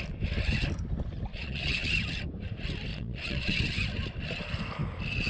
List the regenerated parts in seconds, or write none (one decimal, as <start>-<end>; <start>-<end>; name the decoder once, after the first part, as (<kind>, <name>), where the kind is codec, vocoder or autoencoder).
1.3-1.9 (vocoder, Vocos); 2.9-3.6